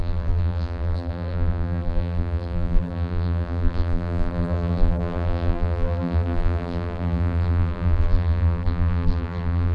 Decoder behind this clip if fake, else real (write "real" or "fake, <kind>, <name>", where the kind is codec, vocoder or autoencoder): fake, vocoder, BigVGAN v2